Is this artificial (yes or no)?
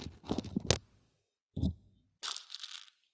no